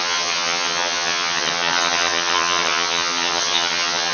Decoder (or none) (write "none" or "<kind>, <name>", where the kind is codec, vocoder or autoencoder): vocoder, HiFi-GAN